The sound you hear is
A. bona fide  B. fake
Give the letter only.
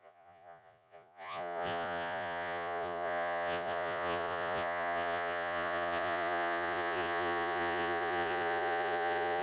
B